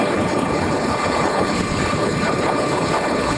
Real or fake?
fake